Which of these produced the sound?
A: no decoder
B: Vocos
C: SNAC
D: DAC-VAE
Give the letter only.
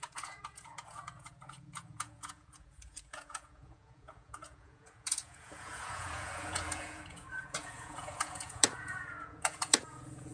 B